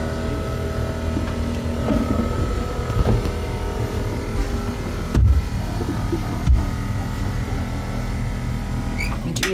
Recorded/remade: recorded